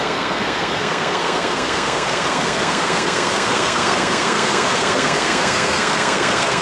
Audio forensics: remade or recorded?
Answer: remade